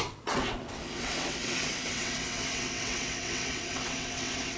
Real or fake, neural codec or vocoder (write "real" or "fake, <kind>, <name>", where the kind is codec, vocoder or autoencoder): fake, vocoder, WaveNeXt